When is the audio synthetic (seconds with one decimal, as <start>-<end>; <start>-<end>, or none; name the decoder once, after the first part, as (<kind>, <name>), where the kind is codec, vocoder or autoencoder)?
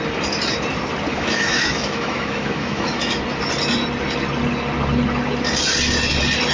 1.1-3.2 (autoencoder, DAC-VAE)